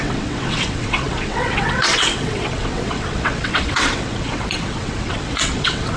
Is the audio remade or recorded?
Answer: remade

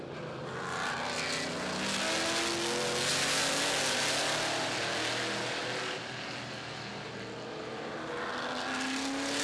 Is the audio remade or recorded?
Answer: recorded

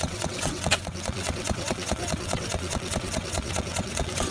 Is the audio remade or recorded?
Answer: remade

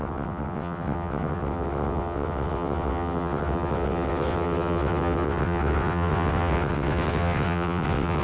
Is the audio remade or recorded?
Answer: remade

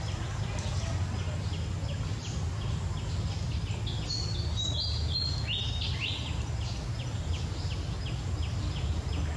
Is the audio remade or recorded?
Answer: recorded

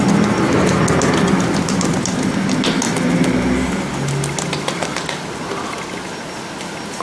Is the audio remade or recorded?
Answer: recorded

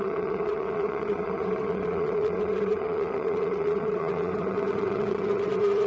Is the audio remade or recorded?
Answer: remade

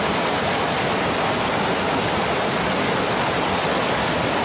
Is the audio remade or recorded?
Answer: recorded